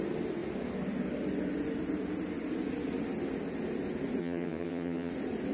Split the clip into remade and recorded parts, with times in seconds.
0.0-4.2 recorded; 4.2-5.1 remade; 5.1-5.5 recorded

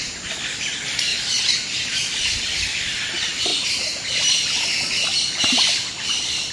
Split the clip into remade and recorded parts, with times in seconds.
0.0-6.5 recorded

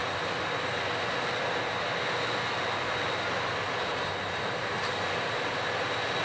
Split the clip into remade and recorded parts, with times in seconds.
0.0-6.2 recorded

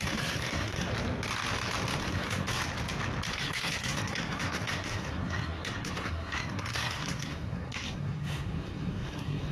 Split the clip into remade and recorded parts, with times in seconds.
0.0-0.9 remade; 0.9-2.0 recorded; 2.0-2.6 remade; 2.6-3.3 recorded; 3.3-9.5 remade

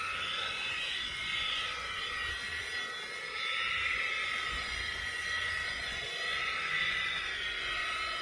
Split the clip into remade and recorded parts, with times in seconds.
0.0-2.5 remade; 2.5-3.7 recorded; 3.7-8.2 remade

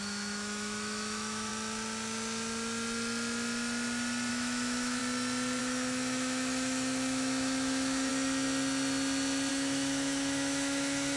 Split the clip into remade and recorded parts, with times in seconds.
0.0-1.5 remade; 1.5-4.3 recorded; 4.3-5.0 remade; 5.0-5.6 recorded; 5.6-8.1 remade; 8.1-9.5 recorded; 9.5-11.2 remade